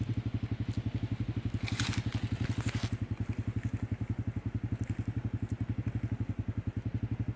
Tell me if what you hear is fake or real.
real